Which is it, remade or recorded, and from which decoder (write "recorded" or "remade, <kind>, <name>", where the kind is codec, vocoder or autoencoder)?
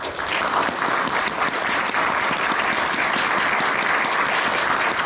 recorded